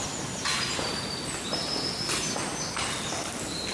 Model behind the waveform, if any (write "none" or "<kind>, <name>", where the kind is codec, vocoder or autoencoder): none